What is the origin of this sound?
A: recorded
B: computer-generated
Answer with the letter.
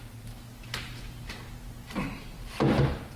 A